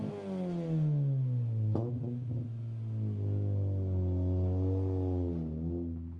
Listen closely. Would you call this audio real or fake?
real